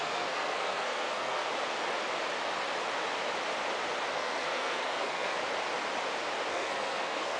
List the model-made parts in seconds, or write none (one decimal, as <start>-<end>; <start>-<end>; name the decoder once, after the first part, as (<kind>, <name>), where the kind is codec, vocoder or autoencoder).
0.0-1.4 (codec, SNAC); 4.1-5.3; 6.5-7.4